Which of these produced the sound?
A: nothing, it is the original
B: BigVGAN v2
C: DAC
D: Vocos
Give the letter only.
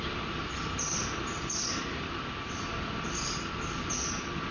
A